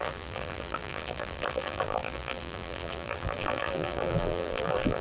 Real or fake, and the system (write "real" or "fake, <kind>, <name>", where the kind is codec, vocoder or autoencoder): fake, vocoder, BigVGAN v2